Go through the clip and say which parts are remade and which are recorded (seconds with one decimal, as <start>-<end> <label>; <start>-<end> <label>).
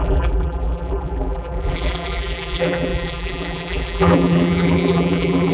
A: 0.0-5.5 remade